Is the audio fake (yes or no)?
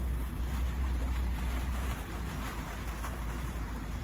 yes